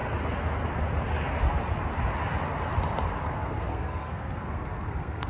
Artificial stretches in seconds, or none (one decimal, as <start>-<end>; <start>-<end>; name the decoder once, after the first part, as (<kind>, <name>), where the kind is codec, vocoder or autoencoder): 3.2-5.3 (codec, SNAC)